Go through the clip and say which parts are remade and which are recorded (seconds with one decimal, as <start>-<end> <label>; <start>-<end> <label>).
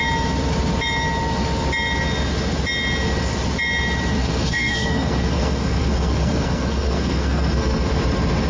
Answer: 0.0-4.2 recorded; 4.2-7.9 remade; 7.9-8.5 recorded